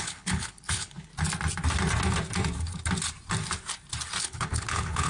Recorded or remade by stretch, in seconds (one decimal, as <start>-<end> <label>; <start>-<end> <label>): 0.0-1.1 remade; 1.1-4.2 recorded; 4.2-5.1 remade